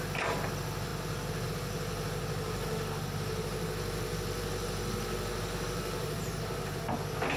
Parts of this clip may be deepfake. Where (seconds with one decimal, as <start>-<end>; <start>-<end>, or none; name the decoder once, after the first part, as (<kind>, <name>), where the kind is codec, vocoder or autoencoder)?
none